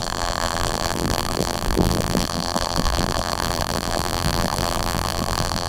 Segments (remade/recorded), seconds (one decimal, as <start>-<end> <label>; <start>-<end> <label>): 0.0-5.7 remade